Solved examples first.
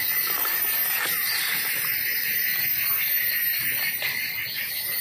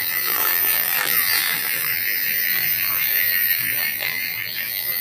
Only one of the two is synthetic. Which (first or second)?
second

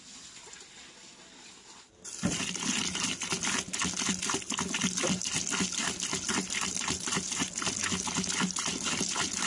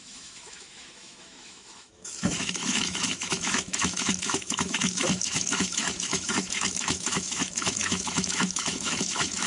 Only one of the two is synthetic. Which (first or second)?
second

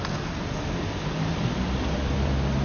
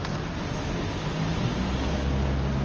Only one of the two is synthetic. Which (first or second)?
first